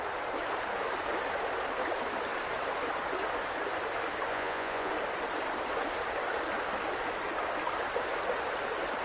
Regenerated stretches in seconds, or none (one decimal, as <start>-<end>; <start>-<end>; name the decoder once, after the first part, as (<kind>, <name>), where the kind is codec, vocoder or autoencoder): 4.3-4.9 (vocoder, Vocos)